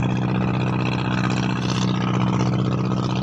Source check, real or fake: real